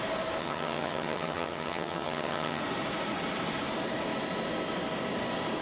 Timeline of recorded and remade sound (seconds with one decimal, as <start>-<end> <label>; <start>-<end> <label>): 0.0-0.4 recorded; 0.4-2.6 remade; 2.6-5.6 recorded